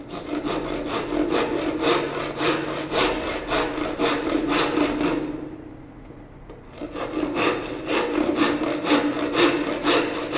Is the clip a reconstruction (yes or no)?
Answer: no